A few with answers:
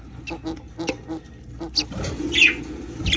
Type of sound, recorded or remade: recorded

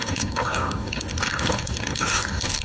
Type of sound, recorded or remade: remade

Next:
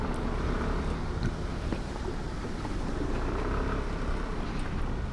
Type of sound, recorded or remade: recorded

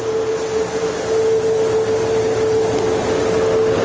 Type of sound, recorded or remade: recorded